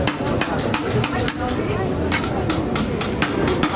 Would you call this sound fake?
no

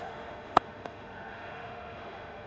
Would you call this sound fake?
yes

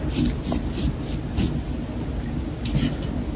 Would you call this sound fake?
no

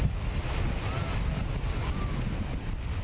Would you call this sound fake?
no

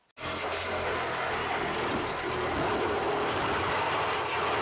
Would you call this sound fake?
no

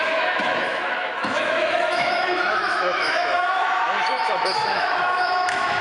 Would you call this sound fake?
yes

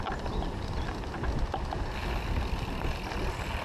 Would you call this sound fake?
no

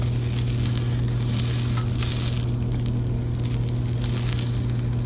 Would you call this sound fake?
no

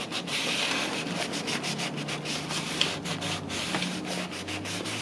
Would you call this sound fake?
no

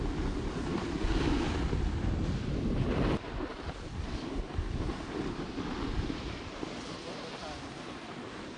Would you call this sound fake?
no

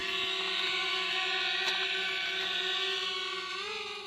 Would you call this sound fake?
no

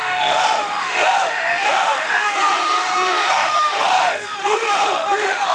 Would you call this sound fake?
yes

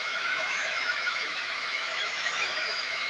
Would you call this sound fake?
yes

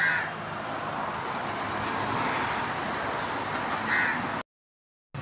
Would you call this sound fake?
no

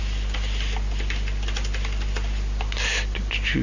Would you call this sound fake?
no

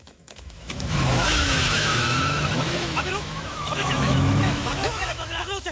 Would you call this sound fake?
yes